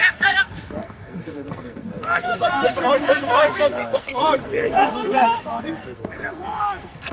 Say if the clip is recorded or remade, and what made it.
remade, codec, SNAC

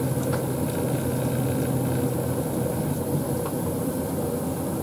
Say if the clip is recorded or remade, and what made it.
recorded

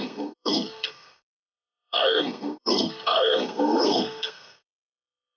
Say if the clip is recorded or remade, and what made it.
remade, codec, SNAC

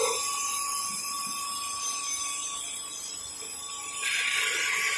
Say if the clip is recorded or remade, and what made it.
recorded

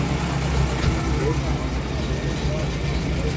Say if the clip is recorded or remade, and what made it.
recorded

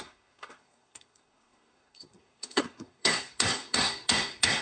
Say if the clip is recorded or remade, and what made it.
remade, codec, SNAC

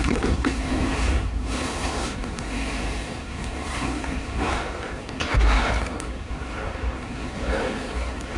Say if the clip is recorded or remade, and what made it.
remade, codec, SNAC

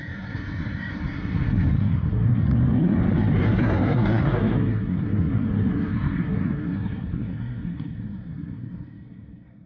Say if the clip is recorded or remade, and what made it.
remade, codec, SNAC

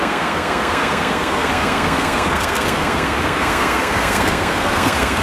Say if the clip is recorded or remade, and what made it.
remade, codec, SNAC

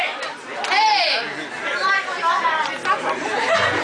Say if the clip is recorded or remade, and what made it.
recorded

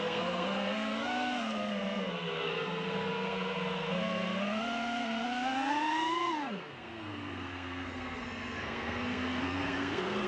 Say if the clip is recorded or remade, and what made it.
remade, codec, SNAC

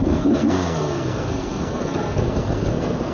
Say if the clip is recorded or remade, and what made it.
remade, codec, SNAC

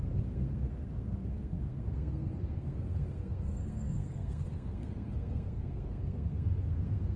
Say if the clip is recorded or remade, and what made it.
remade, codec, SNAC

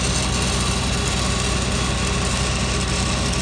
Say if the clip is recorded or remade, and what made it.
recorded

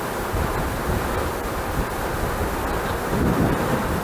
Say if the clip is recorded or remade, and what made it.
recorded